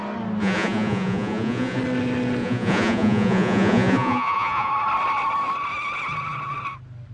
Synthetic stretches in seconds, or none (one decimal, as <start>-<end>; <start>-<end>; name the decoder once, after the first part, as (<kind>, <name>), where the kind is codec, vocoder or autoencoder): 0.4-1.8 (vocoder, Vocos); 2.4-4.7